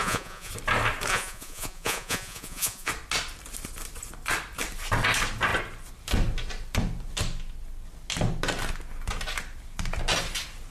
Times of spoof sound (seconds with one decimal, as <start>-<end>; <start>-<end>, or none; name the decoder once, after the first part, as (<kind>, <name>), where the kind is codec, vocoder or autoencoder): 0.0-0.5 (vocoder, Vocos); 1.1-2.9